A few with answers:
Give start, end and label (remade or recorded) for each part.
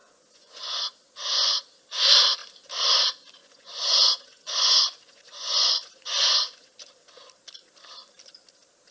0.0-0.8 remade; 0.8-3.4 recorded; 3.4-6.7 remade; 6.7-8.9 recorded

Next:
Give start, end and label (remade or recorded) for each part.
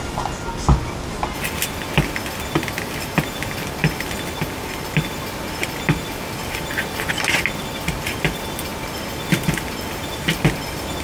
0.0-11.0 recorded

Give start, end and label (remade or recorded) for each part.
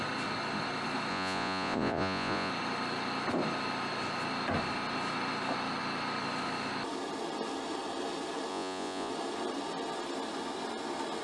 0.0-1.1 recorded; 1.1-2.5 remade; 2.5-8.5 recorded; 8.5-9.1 remade; 9.1-11.2 recorded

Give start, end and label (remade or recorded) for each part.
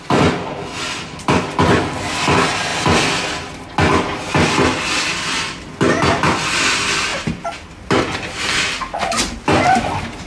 0.0-10.3 recorded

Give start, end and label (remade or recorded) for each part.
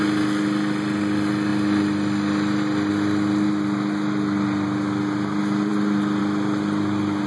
0.0-7.3 recorded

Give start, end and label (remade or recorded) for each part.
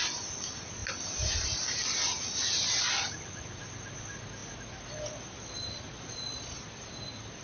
0.0-7.4 recorded